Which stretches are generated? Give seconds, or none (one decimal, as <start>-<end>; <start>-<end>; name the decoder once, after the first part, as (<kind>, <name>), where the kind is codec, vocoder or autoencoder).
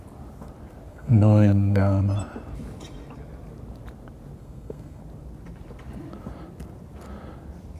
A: 0.9-2.0 (codec, SNAC); 4.4-5.0